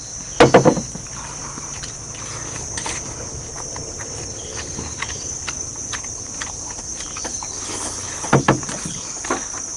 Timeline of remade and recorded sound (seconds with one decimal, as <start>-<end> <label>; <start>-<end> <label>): 0.0-4.5 recorded; 4.5-6.8 remade; 6.8-9.8 recorded